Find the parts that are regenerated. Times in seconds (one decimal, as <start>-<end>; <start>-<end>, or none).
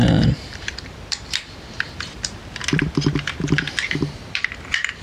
0.0-2.4; 4.3-5.0